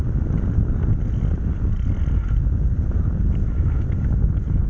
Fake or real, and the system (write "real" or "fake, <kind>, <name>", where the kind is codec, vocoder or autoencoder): real